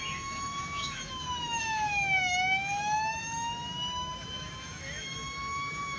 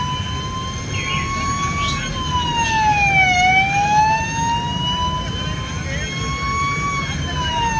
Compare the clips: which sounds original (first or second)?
second